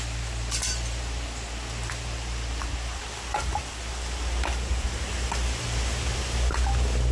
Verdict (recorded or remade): recorded